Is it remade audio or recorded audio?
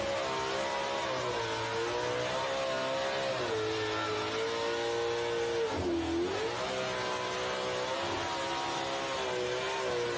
recorded